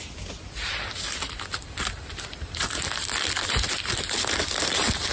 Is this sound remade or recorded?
remade